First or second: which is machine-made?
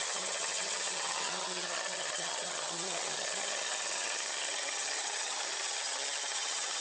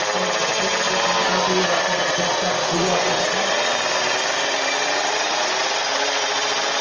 first